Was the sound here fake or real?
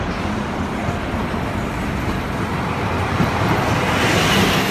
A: real